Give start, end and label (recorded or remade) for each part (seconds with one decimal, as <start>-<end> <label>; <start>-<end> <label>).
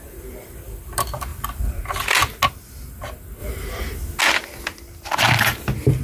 0.0-6.0 recorded